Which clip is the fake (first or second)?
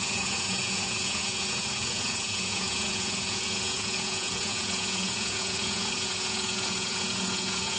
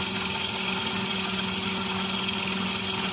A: first